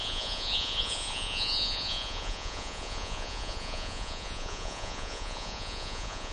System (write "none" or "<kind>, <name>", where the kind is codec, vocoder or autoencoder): vocoder, Vocos